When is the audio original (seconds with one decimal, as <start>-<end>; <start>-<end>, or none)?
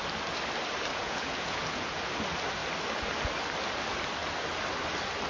0.0-0.9; 2.0-5.3